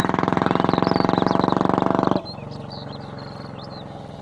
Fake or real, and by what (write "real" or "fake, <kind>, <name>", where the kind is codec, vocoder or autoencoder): real